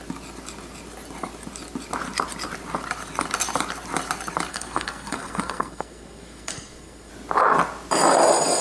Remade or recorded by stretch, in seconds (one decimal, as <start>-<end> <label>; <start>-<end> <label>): 0.0-4.5 recorded; 4.5-7.1 remade; 7.1-8.6 recorded